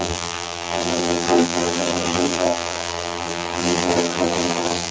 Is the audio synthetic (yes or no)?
yes